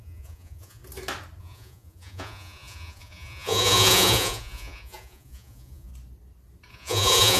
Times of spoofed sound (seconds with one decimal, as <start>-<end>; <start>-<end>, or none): 0.0-0.8; 1.4-5.9; 6.7-7.4